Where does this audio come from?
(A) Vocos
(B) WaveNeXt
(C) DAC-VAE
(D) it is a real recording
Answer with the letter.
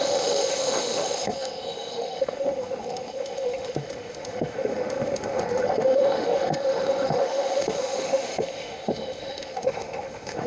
C